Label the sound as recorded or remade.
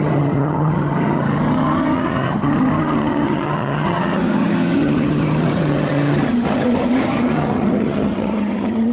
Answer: remade